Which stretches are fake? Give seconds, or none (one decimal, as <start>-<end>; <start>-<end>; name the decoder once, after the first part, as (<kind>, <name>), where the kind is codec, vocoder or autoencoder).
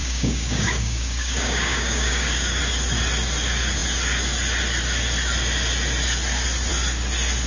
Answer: 0.0-2.6 (codec, DAC)